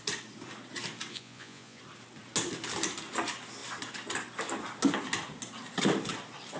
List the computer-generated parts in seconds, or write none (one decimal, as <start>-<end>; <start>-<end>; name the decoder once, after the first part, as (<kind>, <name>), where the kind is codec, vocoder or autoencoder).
1.1-1.8 (vocoder, Vocos)